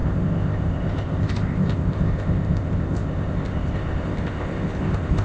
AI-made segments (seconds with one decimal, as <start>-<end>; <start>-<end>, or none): 0.0-5.2